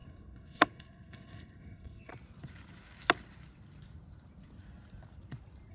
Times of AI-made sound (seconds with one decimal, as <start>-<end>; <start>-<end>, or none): 0.0-2.1